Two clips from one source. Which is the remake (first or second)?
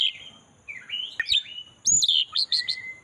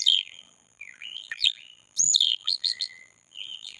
second